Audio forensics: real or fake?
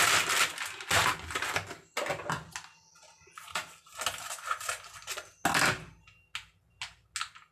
real